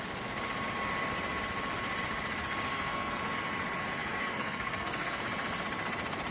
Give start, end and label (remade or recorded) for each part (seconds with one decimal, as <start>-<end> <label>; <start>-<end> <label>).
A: 0.0-2.7 recorded; 2.7-3.2 remade; 3.2-4.0 recorded; 4.0-5.2 remade; 5.2-6.3 recorded